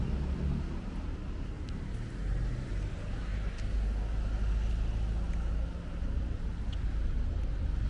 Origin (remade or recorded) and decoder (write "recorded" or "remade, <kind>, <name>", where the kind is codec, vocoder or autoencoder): recorded